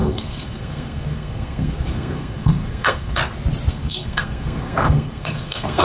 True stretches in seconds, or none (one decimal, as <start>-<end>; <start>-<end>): 3.2-3.7